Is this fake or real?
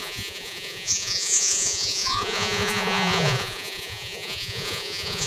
fake